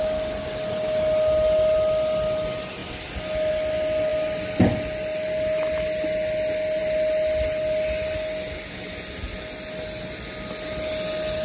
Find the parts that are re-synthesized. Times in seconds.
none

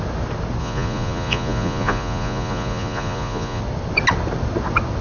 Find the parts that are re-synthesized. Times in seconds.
0.6-3.6 (vocoder, Vocos)